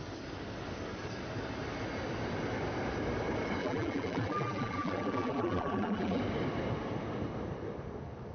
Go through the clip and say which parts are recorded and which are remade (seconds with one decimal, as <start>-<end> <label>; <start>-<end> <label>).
0.0-3.6 recorded; 3.6-6.2 remade; 6.2-8.3 recorded